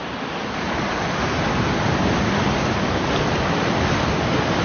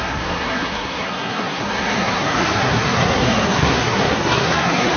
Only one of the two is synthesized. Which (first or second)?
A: second